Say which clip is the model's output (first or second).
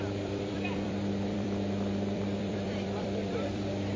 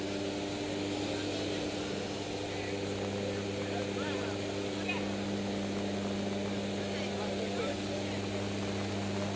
first